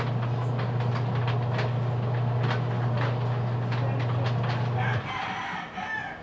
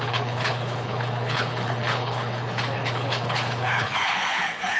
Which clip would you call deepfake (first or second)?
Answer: second